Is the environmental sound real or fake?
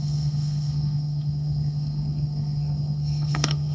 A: fake